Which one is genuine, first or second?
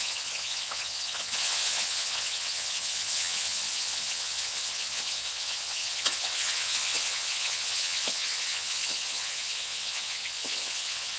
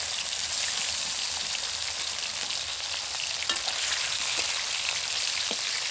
second